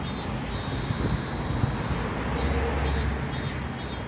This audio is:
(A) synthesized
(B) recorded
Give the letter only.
B